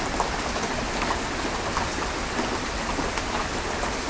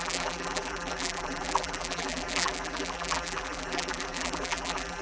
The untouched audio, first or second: first